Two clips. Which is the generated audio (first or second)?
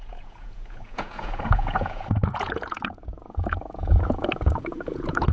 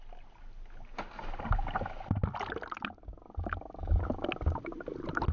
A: first